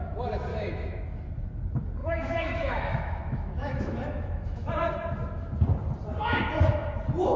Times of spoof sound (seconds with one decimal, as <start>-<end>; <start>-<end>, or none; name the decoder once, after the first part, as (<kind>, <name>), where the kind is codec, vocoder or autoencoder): 0.5-1.0 (autoencoder, DAC-VAE); 2.0-4.7